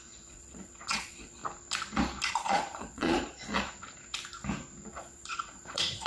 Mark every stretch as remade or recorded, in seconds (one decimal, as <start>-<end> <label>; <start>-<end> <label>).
0.0-1.4 remade; 1.4-2.3 recorded; 2.3-3.5 remade; 3.5-4.9 recorded; 4.9-6.1 remade